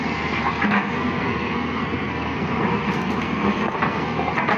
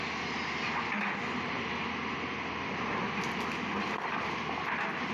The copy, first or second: first